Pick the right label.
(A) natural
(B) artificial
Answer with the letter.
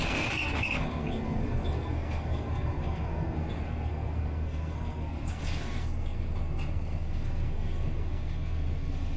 B